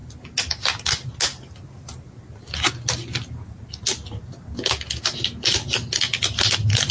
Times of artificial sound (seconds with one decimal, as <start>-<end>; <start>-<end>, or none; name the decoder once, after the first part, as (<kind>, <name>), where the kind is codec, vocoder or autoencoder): none